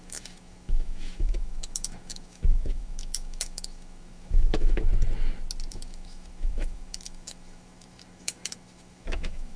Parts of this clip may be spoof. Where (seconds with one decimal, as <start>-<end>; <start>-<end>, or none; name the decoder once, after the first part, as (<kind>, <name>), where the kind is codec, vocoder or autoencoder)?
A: 0.0-4.9 (autoencoder, DAC-VAE); 5.7-9.6